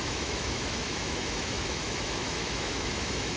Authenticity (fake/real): fake